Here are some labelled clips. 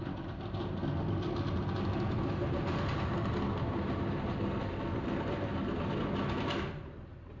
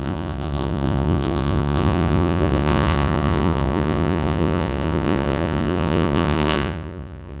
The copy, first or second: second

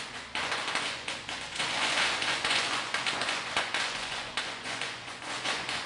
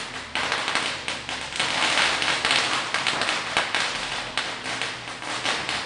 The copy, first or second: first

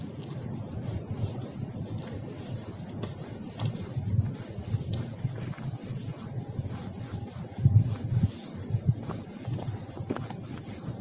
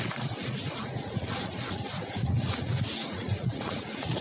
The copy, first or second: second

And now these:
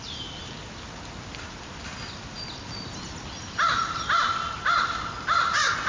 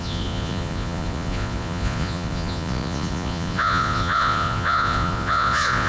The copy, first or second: second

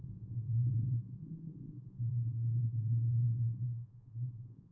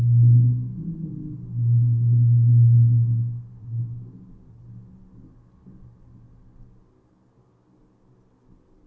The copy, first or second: first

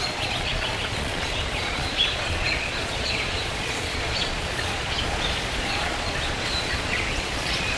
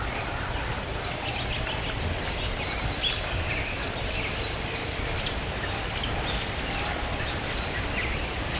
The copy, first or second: first